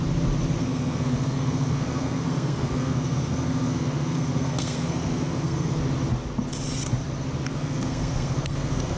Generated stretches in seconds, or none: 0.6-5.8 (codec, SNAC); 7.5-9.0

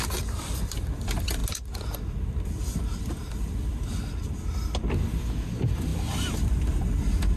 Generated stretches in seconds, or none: none

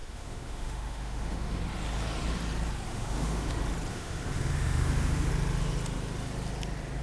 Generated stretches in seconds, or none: 0.0-1.6 (autoencoder, DAC-VAE); 2.9-3.5; 3.9-5.3

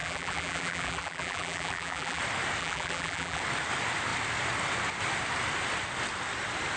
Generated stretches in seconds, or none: 0.0-2.2 (vocoder, BigVGAN v2); 2.6-3.4

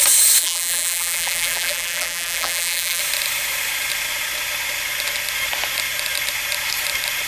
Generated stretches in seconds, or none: 0.4-3.0 (vocoder, BigVGAN v2)

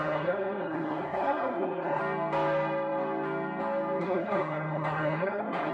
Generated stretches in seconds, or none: 0.0-2.0 (codec, SNAC); 4.0-5.7

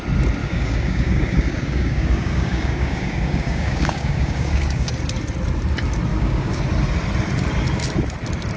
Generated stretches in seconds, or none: 0.4-4.9 (codec, DAC); 6.1-6.6